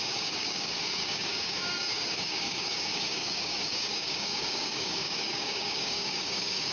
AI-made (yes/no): yes